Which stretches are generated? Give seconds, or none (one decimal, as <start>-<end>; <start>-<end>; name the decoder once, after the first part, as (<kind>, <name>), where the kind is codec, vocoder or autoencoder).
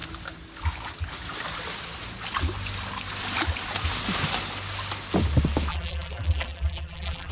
5.7-7.3 (vocoder, BigVGAN v2)